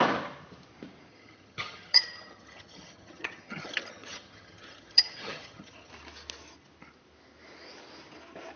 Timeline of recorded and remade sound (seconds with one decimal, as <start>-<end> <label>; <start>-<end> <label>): 0.0-1.1 recorded; 1.1-5.9 remade; 5.9-8.6 recorded